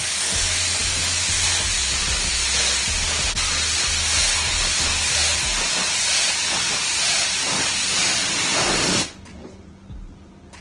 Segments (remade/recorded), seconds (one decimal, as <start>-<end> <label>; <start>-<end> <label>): 0.0-10.6 recorded